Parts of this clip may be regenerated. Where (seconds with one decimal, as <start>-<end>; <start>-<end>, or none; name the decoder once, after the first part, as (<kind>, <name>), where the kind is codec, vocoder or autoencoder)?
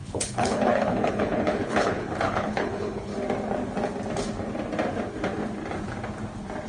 0.0-3.1 (codec, HILCodec)